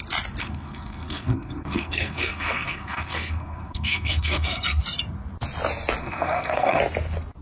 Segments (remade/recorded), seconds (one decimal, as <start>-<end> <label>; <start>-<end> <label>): 0.0-0.4 recorded; 0.4-4.8 remade; 4.8-6.0 recorded; 6.0-6.8 remade; 6.8-7.4 recorded